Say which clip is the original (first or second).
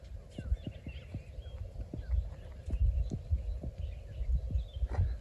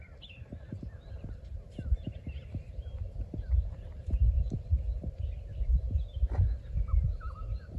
first